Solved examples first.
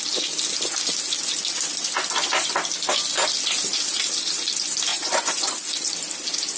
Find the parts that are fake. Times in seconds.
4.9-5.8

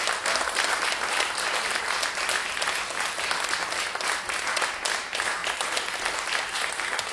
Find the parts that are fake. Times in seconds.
none

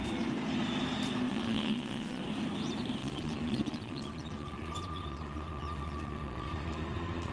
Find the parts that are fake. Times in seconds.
1.3-2.2; 3.0-7.3

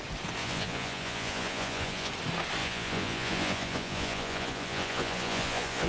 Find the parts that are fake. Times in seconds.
0.4-2.1; 2.6-5.9

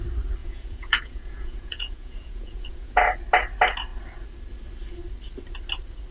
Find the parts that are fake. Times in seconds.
0.4-3.0

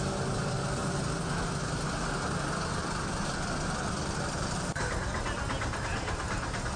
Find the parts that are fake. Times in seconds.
none

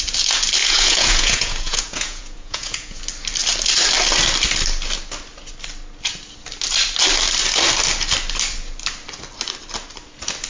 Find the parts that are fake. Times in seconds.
0.6-3.0